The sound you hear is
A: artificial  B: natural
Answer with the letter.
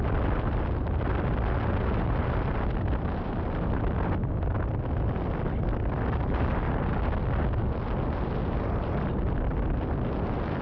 B